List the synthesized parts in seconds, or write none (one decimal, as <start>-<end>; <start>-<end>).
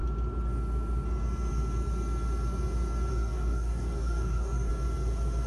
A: 3.1-4.7